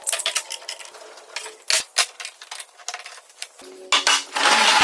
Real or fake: real